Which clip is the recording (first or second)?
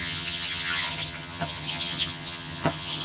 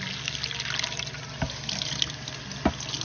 second